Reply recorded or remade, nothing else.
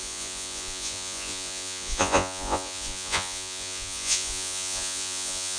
remade